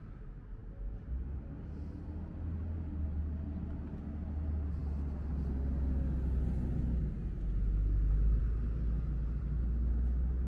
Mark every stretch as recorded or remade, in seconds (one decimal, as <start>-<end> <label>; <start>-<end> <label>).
0.0-10.5 recorded